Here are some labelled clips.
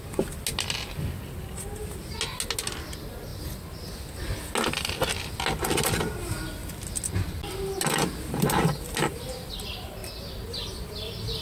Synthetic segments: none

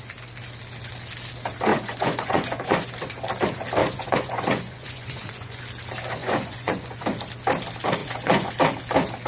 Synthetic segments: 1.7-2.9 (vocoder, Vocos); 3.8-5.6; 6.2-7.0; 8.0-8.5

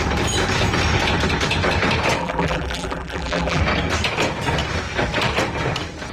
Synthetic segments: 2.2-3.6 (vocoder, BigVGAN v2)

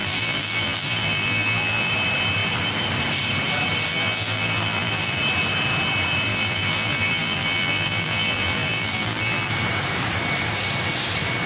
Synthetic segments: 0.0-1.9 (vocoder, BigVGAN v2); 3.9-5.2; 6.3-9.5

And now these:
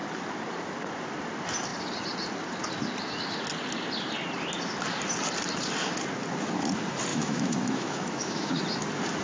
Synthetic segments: 7.1-8.5 (autoencoder, DAC-VAE)

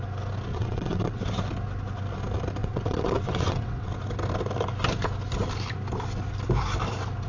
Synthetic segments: 0.5-1.2 (vocoder, WaveNeXt); 2.6-3.9

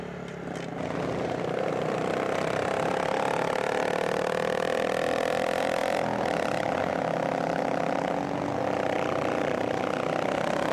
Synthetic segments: none

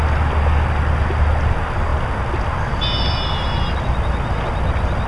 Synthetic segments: none